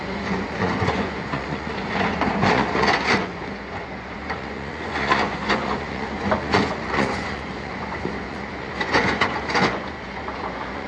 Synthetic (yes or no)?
yes